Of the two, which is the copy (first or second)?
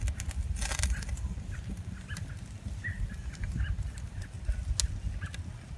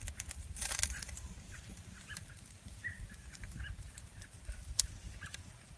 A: second